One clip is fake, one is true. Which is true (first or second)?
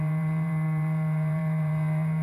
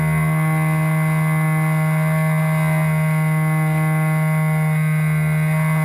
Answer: second